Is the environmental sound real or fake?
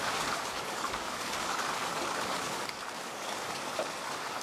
fake